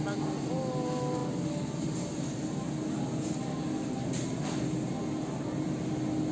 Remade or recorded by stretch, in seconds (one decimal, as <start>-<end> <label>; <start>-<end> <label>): 0.0-6.3 recorded